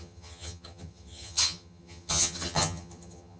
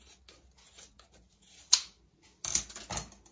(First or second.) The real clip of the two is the second